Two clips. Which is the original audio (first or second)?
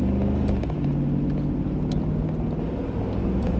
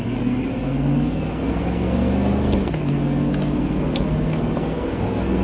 first